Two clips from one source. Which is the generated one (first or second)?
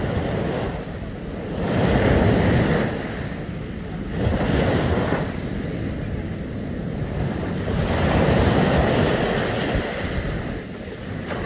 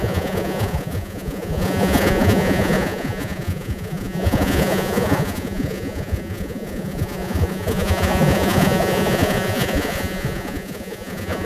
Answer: second